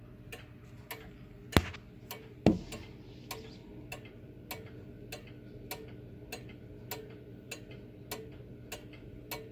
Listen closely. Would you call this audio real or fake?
real